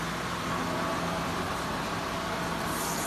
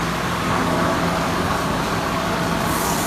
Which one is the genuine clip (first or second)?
first